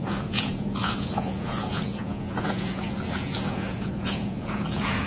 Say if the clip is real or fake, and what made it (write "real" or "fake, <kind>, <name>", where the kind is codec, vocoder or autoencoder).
fake, vocoder, Vocos